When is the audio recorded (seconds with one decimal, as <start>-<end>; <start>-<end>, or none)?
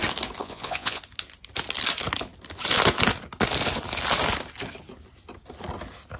0.0-0.4; 1.0-6.2